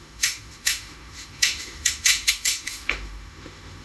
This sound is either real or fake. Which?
fake